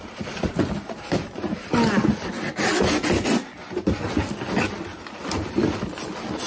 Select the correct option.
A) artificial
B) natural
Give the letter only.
B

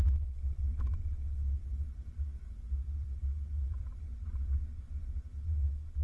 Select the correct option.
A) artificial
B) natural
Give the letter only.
A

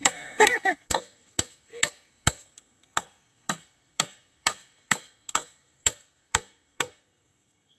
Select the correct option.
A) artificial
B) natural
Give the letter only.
A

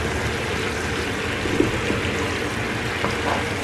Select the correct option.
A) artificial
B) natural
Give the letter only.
B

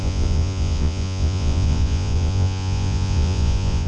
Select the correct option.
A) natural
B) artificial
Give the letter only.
B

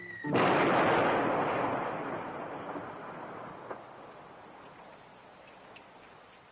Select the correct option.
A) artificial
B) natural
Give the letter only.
B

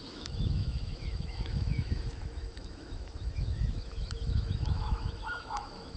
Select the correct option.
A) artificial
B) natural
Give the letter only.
A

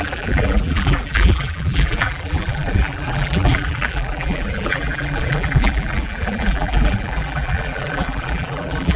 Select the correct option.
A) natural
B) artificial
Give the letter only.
B